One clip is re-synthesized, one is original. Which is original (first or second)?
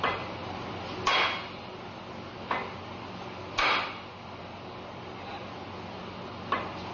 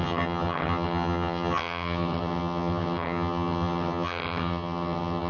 first